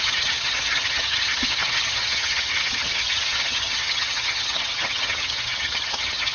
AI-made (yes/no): yes